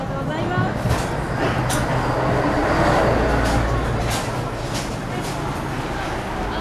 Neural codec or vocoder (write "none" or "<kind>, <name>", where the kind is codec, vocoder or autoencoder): none